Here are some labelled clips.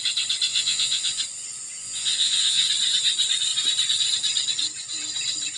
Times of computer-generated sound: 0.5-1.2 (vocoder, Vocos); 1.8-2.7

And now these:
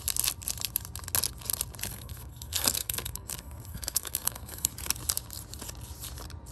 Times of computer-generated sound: 1.9-4.7 (codec, SNAC)